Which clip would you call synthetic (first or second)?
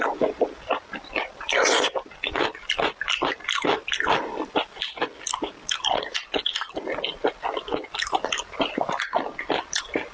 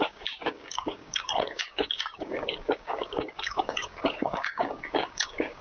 second